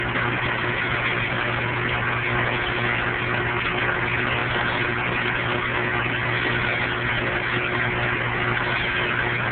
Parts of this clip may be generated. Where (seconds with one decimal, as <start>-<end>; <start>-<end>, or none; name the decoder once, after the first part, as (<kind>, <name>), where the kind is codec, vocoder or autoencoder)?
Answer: none

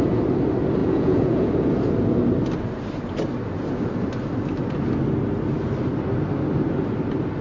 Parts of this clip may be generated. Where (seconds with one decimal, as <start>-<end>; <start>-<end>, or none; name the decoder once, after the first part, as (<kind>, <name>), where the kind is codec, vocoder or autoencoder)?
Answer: 0.8-1.5 (vocoder, Vocos)

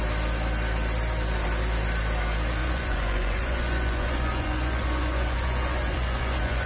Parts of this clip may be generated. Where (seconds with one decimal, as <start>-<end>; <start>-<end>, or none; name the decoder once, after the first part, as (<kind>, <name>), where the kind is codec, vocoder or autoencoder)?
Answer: 2.6-6.7 (vocoder, Vocos)